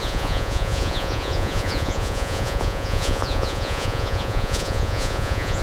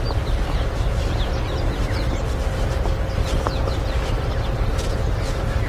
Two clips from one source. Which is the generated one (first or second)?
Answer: first